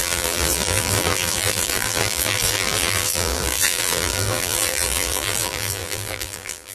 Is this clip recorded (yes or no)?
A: no